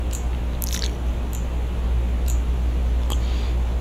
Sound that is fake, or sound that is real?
real